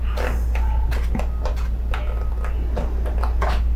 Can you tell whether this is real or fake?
real